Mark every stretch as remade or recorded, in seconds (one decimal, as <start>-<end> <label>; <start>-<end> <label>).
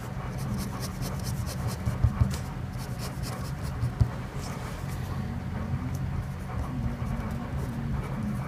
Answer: 0.0-8.5 recorded